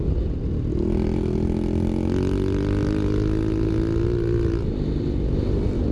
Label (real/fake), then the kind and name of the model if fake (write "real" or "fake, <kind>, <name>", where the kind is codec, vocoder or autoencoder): real